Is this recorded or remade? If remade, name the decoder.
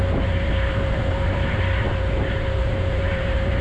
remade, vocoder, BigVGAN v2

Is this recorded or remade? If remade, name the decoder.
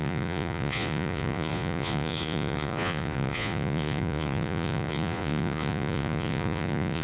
remade, vocoder, Vocos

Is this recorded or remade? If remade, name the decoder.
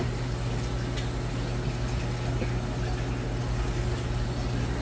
recorded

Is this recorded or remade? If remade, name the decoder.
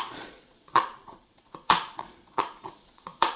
remade, vocoder, Vocos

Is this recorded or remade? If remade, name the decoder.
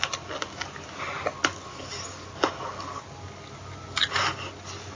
recorded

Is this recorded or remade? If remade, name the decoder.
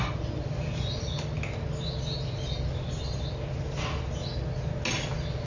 recorded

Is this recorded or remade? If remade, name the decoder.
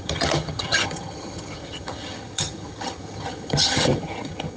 remade, vocoder, HiFi-GAN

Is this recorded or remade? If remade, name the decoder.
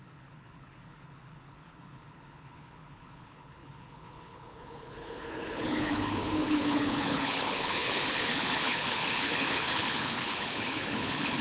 remade, codec, HILCodec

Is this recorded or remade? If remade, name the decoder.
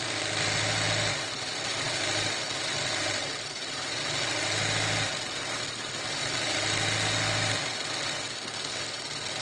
recorded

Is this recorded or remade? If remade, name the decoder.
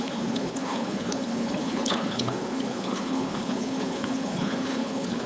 remade, codec, HILCodec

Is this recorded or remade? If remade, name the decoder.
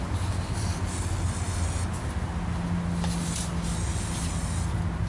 recorded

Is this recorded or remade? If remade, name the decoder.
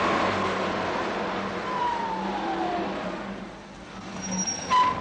recorded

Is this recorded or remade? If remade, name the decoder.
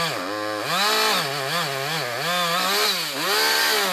recorded